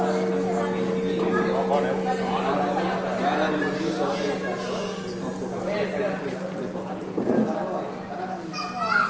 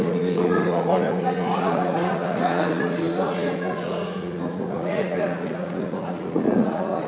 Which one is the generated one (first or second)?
second